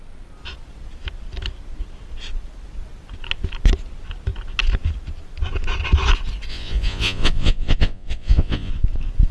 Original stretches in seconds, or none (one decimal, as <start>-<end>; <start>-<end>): 0.0-6.5; 8.7-9.3